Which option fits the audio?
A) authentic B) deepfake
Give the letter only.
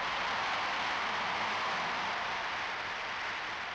A